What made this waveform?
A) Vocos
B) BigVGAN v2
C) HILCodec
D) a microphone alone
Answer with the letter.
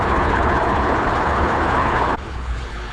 C